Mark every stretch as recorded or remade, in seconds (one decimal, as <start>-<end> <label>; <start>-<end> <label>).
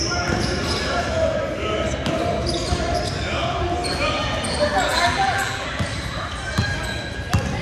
0.0-4.9 recorded; 4.9-5.7 remade; 5.7-7.6 recorded